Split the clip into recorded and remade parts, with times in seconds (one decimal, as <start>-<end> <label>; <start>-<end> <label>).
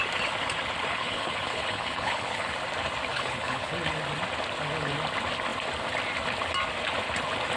0.0-0.9 recorded; 0.9-2.5 remade; 2.5-3.1 recorded; 3.1-3.7 remade; 3.7-7.6 recorded